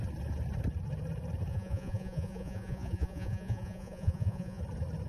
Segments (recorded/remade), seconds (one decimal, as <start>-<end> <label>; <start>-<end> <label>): 0.0-1.5 recorded; 1.5-4.6 remade; 4.6-5.1 recorded